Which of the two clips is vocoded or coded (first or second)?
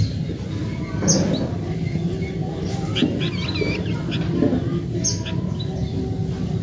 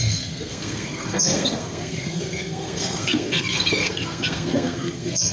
second